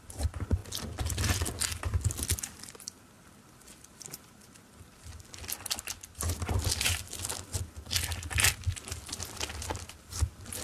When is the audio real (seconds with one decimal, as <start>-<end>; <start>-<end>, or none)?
0.0-10.6